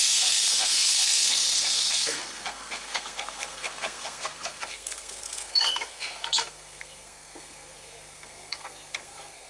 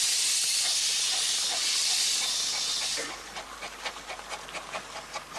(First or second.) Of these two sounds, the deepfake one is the first